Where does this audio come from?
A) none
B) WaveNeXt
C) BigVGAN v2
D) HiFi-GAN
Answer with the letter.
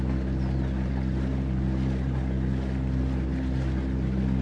A